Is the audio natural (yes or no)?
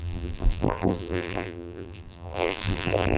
no